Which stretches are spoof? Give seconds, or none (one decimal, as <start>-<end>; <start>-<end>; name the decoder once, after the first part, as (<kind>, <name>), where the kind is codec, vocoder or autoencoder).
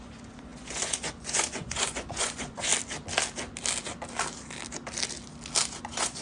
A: 0.0-2.7 (vocoder, Vocos); 5.8-6.2